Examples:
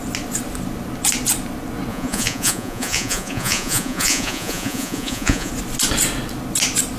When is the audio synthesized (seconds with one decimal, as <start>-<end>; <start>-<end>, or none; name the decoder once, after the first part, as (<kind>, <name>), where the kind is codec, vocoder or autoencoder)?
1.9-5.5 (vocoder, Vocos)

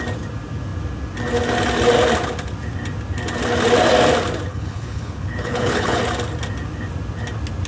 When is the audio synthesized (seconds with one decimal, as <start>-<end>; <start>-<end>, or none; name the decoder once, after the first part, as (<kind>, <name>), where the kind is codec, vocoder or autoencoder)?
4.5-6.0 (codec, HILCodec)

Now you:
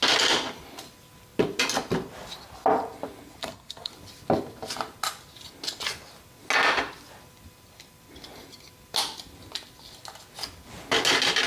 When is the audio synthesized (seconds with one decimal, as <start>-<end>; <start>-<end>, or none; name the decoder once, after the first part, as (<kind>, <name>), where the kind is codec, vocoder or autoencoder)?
3.4-3.9 (codec, SNAC)

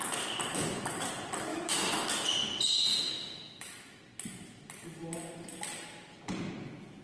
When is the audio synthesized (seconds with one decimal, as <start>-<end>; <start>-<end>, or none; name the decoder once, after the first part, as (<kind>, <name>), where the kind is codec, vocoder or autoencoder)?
0.5-1.1 (autoencoder, DAC-VAE); 1.5-2.1; 2.8-4.0

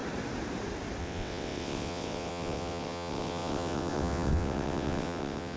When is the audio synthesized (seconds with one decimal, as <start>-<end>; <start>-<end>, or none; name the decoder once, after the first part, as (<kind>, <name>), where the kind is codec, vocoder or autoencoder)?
1.0-5.6 (vocoder, WaveNeXt)

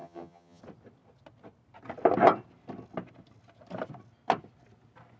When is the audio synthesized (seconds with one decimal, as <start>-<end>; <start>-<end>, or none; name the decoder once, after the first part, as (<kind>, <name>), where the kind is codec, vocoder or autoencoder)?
0.0-0.6 (vocoder, HiFi-GAN)

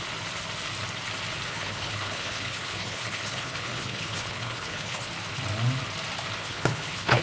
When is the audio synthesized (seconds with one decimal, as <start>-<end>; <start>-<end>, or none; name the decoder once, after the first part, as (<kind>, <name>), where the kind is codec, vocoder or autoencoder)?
1.5-5.1 (codec, HILCodec); 6.4-7.2